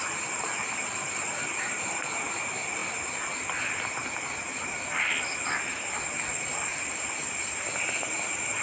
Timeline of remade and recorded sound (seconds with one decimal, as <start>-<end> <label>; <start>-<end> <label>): 0.0-8.6 recorded